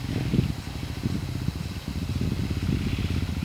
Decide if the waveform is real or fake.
real